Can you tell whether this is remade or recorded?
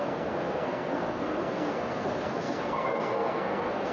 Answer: remade